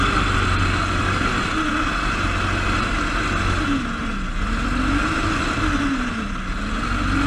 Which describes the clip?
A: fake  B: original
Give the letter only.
B